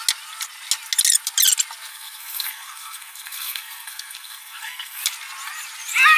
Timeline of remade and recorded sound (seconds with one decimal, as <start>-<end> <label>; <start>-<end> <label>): 0.0-1.9 recorded; 1.9-5.0 remade; 5.0-6.2 recorded